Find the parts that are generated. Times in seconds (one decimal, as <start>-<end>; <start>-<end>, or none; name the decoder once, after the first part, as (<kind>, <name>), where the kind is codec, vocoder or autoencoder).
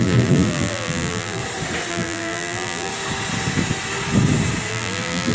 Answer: 0.0-1.4 (vocoder, BigVGAN v2); 1.9-2.9; 4.7-5.3